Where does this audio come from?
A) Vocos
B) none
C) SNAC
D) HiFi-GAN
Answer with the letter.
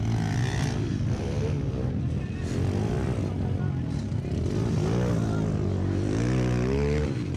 B